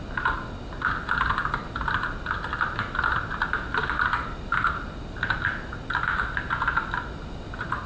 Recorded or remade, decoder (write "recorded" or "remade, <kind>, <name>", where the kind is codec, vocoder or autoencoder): recorded